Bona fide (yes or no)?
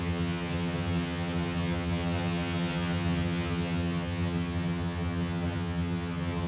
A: no